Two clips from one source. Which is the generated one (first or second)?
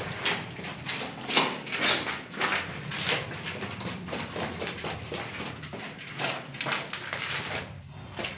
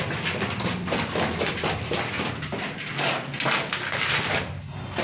first